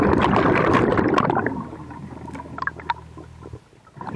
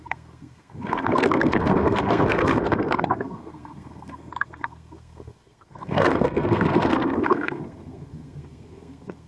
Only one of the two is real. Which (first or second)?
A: first